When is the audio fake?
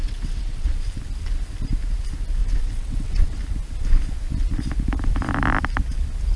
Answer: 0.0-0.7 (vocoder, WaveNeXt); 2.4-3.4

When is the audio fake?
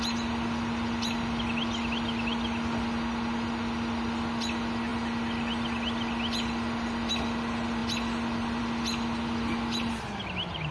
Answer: none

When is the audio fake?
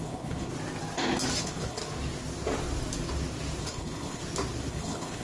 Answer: 0.0-0.5 (codec, HILCodec); 1.4-1.8; 3.6-4.2; 4.7-5.2